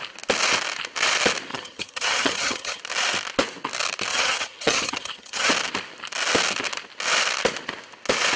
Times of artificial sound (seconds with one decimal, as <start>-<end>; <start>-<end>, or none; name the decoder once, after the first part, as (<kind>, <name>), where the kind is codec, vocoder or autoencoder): 1.5-2.8 (vocoder, HiFi-GAN); 4.1-5.5